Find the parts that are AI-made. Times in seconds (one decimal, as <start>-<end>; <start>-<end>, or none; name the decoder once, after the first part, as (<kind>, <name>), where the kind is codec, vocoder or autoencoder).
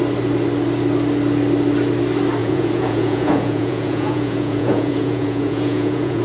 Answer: 2.4-6.2 (vocoder, Vocos)